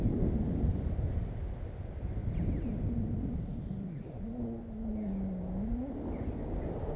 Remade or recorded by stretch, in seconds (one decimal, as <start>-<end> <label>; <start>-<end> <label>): 0.0-7.0 recorded